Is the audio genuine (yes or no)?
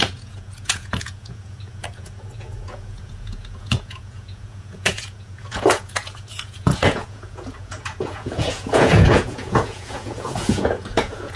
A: no